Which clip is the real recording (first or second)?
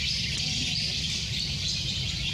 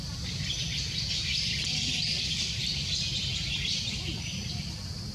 first